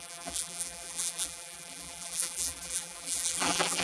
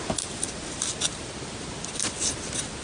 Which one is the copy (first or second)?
first